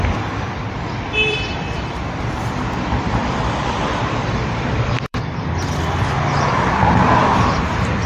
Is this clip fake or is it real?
fake